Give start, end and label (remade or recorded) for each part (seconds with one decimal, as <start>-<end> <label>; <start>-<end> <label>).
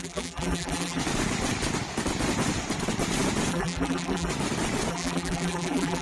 0.0-1.0 remade; 1.0-3.5 recorded; 3.5-4.3 remade; 4.3-4.9 recorded; 4.9-6.0 remade